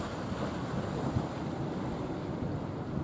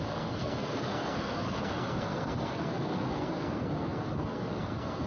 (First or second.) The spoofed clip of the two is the second